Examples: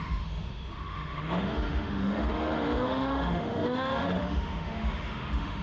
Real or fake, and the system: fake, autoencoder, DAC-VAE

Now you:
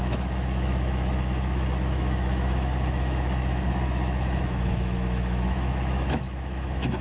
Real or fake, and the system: fake, autoencoder, DAC-VAE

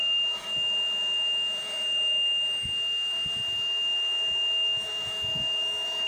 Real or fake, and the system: fake, autoencoder, DAC-VAE